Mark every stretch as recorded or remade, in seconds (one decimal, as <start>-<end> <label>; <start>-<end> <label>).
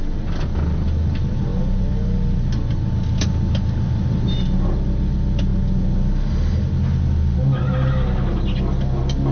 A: 0.0-9.3 recorded